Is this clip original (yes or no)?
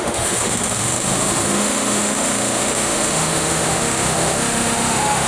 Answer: no